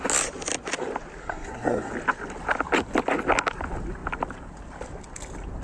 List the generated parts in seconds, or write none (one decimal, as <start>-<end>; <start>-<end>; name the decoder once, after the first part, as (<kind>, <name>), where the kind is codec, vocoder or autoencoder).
1.2-1.9 (codec, SNAC)